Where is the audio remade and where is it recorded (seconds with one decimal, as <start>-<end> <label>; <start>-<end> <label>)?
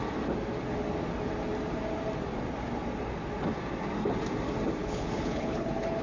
0.0-4.8 recorded; 4.8-6.0 remade